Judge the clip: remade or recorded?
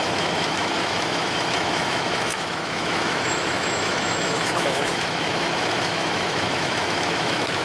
remade